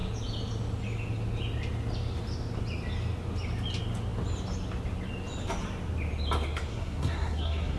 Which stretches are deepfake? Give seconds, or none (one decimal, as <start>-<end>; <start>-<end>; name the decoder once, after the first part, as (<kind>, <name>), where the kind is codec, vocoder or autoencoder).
6.7-7.8 (codec, SNAC)